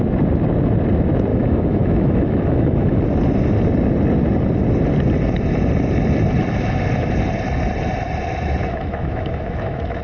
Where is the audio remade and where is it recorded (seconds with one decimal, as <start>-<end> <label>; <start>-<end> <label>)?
0.0-1.3 recorded; 1.3-3.0 remade; 3.0-8.6 recorded; 8.6-10.0 remade